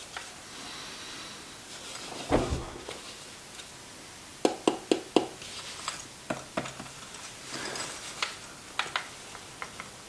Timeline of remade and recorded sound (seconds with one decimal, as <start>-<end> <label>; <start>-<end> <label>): 0.0-2.4 recorded; 2.4-2.9 remade; 2.9-10.1 recorded